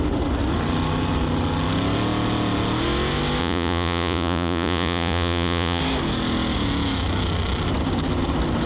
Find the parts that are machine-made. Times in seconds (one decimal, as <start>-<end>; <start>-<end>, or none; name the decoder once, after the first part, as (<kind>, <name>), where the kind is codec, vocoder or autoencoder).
3.4-5.8 (vocoder, Vocos)